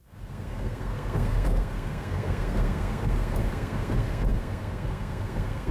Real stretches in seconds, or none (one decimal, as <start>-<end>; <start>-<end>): none